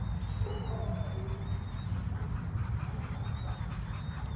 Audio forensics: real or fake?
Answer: real